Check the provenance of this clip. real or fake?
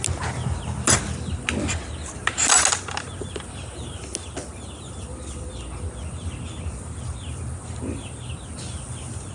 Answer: real